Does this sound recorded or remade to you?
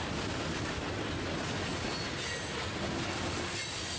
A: recorded